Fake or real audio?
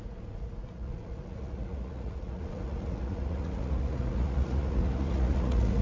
fake